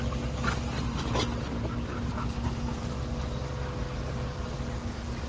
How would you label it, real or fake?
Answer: real